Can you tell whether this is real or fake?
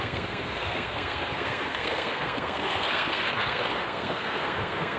fake